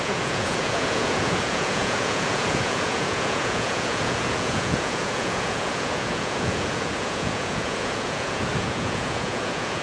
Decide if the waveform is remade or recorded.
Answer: remade